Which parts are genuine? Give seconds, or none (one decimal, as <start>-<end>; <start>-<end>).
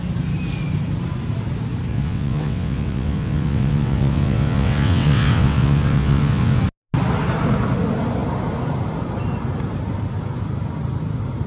0.0-1.9; 6.6-11.5